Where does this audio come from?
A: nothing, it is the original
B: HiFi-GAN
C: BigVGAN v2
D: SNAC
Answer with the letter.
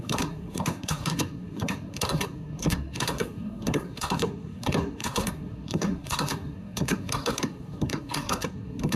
D